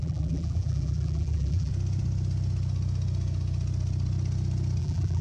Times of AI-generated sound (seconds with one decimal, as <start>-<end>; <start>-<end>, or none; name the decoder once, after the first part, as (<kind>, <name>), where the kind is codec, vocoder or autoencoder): 0.0-1.7 (vocoder, BigVGAN v2); 4.8-5.2